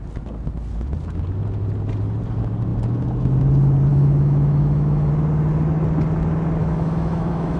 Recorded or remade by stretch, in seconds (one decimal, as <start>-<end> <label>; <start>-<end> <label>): 0.0-3.9 recorded; 3.9-5.1 remade; 5.1-6.6 recorded; 6.6-7.6 remade

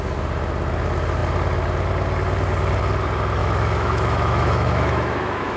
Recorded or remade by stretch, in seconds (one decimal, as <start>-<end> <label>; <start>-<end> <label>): 0.0-3.4 recorded; 3.4-5.6 remade

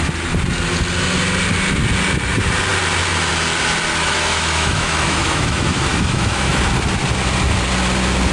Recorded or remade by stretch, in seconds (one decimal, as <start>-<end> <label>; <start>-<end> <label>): 0.0-4.0 recorded; 4.0-6.6 remade; 6.6-8.3 recorded

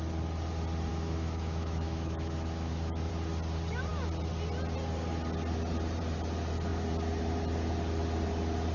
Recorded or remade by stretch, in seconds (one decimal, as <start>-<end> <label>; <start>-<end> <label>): 0.0-0.9 recorded; 0.9-3.1 remade; 3.1-8.7 recorded

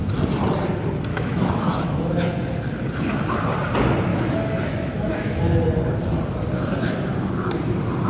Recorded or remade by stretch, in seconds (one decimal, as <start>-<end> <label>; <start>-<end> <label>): 0.0-1.1 recorded; 1.1-2.1 remade; 2.1-4.1 recorded; 4.1-5.4 remade; 5.4-8.1 recorded